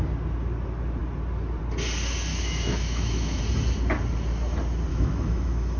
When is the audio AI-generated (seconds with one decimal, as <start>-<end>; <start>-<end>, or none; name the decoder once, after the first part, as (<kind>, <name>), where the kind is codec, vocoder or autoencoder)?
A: 2.3-3.4 (autoencoder, DAC-VAE); 4.9-5.8